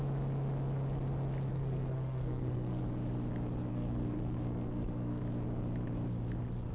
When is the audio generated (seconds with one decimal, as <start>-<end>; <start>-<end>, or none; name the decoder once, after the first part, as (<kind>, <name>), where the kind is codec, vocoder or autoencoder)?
1.5-2.8 (codec, SNAC); 3.7-5.2